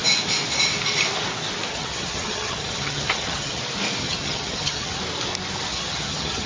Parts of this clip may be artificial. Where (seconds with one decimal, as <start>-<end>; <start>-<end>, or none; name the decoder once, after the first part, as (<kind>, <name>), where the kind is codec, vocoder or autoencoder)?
1.7-3.6 (vocoder, HiFi-GAN); 4.0-5.0; 5.7-6.5